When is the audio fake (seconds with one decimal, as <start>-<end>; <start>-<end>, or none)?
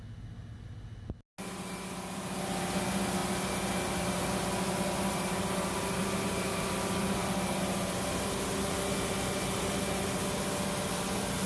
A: none